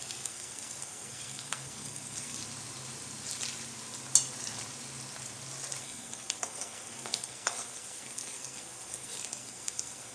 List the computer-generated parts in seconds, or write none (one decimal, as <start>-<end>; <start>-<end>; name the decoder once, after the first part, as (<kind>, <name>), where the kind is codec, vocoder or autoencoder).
0.0-2.4 (codec, SNAC); 5.8-10.1